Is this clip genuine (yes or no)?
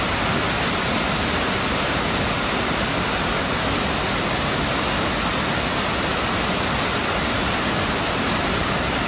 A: yes